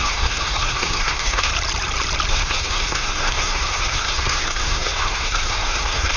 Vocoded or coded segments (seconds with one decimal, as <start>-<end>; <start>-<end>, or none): 0.0-1.5; 2.3-6.2